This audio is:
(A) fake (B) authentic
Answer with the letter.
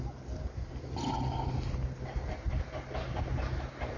B